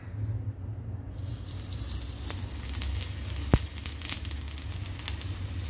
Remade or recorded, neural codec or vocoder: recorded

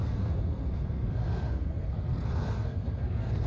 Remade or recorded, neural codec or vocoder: remade, codec, SNAC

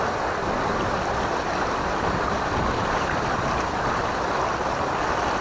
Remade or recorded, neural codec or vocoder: recorded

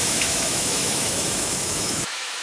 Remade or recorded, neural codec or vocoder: remade, autoencoder, DAC-VAE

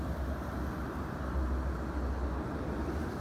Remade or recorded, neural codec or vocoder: recorded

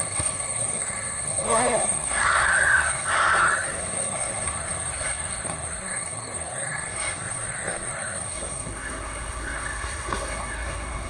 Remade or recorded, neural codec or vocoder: remade, codec, SNAC